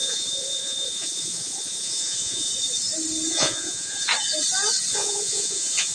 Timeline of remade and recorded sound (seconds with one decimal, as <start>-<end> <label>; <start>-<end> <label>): 0.0-2.5 remade; 2.5-3.3 recorded; 3.3-4.1 remade; 4.1-4.9 recorded; 4.9-5.9 remade